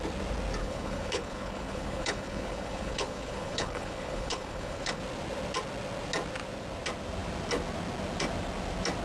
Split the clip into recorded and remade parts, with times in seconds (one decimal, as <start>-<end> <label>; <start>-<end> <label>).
0.0-0.6 recorded; 0.6-5.0 remade; 5.0-9.0 recorded